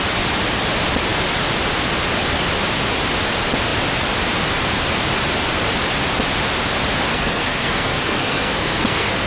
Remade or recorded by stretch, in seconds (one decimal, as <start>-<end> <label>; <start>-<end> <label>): 0.0-7.1 recorded; 7.1-9.3 remade